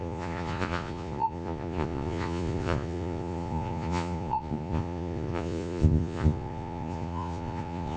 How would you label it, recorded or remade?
remade